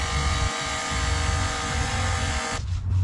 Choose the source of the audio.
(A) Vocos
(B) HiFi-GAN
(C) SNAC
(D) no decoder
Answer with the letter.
A